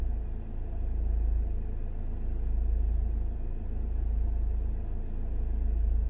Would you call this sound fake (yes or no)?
no